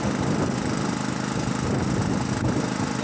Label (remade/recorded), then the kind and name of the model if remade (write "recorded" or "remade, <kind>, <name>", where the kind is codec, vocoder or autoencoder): recorded